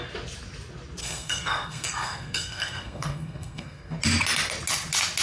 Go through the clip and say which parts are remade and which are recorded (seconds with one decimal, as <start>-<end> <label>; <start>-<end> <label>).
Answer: 0.0-1.0 recorded; 1.0-4.0 remade; 4.0-5.2 recorded